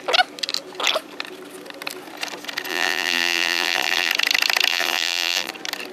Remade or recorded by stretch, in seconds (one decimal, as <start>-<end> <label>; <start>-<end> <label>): 0.0-2.7 recorded; 2.7-4.1 remade; 4.1-4.7 recorded; 4.7-5.5 remade; 5.5-5.9 recorded